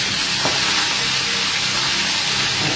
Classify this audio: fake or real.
real